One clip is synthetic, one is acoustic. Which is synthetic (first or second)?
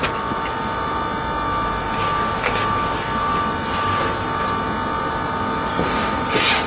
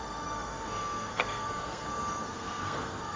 second